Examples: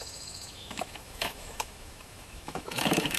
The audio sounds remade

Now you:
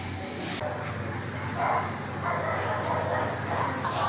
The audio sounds recorded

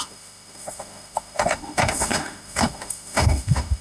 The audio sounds remade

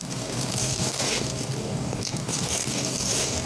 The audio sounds remade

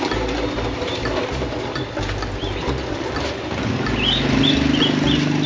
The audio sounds recorded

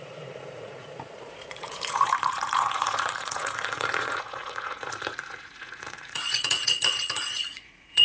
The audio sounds remade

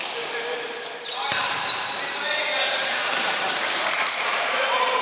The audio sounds remade